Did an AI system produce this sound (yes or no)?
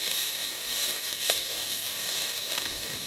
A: yes